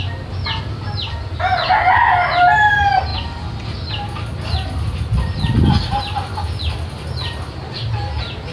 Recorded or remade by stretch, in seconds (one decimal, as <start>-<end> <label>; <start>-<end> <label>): 0.0-8.5 recorded